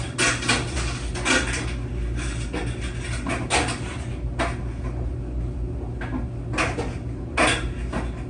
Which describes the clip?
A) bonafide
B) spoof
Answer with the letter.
A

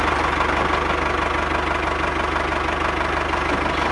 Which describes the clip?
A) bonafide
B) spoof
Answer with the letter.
A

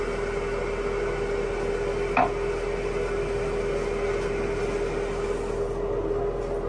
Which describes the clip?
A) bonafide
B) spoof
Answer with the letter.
A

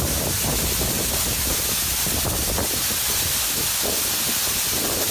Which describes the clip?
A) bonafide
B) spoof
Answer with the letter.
A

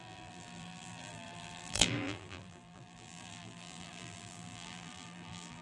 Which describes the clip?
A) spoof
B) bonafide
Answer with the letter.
A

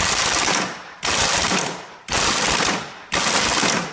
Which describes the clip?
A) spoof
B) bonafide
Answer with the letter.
A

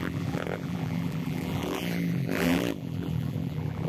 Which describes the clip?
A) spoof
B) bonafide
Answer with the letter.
A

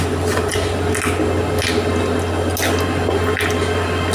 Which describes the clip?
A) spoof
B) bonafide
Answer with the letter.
B